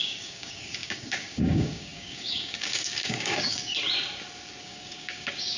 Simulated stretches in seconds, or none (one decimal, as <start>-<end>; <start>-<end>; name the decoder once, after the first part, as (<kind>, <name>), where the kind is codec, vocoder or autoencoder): 0.0-3.7 (codec, DAC); 4.6-5.6